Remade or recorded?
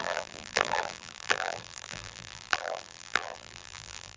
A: remade